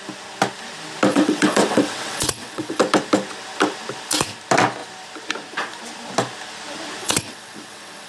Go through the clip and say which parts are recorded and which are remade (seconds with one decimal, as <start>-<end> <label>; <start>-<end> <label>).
0.0-1.1 recorded; 1.1-2.8 remade; 2.8-7.0 recorded; 7.0-8.1 remade